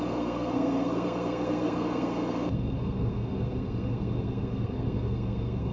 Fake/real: fake